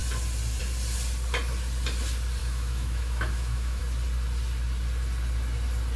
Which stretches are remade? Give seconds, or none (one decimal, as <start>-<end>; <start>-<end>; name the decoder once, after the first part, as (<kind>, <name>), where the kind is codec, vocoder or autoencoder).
2.4-3.8 (autoencoder, DAC-VAE)

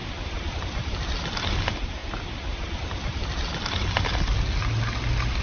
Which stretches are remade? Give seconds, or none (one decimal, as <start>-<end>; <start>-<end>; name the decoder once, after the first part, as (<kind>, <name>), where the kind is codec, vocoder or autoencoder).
0.0-0.6 (vocoder, BigVGAN v2)

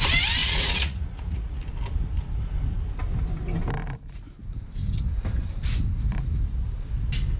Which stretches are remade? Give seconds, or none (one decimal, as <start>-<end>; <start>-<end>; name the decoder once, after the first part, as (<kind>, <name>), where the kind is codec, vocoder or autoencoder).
0.4-1.6 (vocoder, Vocos)

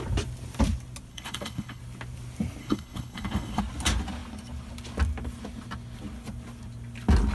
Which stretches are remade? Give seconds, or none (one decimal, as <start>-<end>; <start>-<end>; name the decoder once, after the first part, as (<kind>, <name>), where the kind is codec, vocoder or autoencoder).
1.1-1.8 (codec, HILCodec); 2.6-3.6